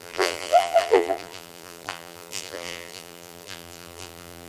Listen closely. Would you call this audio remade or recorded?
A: remade